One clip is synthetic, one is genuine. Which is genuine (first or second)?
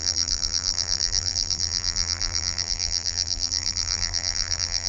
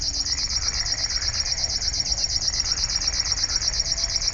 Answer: second